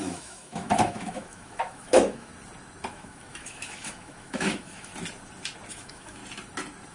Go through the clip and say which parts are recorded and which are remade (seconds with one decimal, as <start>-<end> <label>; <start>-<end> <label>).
0.0-2.3 remade; 2.3-2.9 recorded; 2.9-4.9 remade; 4.9-5.7 recorded; 5.7-6.2 remade; 6.2-6.9 recorded